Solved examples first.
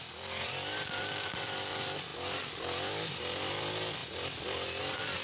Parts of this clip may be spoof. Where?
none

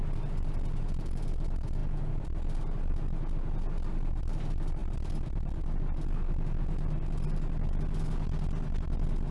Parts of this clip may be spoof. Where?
none

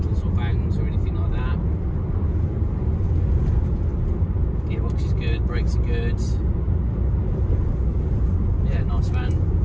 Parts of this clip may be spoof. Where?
none

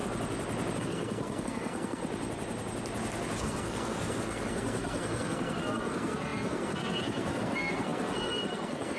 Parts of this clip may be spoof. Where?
0.8-2.0 (codec, SNAC); 3.4-9.0

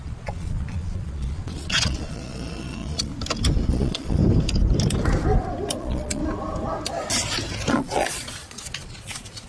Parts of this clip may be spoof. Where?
0.0-3.1 (vocoder, Vocos); 3.7-4.2; 5.8-6.2; 7.7-9.5

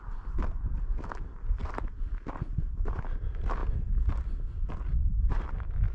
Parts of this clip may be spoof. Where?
1.6-2.9 (vocoder, BigVGAN v2)

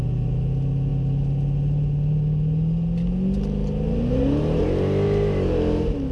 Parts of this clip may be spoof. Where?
none